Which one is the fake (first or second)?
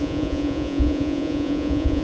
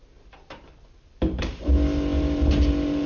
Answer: first